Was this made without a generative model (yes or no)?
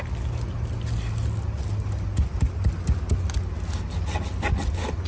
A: yes